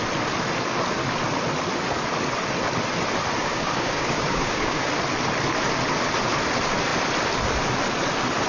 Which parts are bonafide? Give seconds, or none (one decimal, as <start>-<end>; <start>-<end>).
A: 0.0-3.4; 4.9-8.5